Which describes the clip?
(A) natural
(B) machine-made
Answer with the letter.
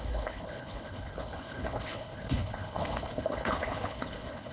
B